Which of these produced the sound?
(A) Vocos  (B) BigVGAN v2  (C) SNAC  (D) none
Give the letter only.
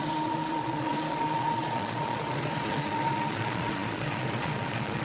A